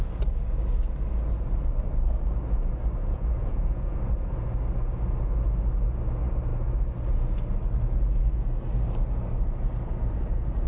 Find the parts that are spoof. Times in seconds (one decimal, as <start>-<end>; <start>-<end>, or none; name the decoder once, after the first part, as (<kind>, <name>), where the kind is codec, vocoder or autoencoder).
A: 3.0-4.0 (vocoder, Vocos)